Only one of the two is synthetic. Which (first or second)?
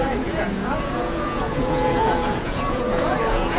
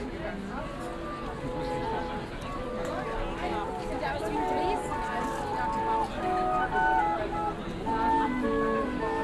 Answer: first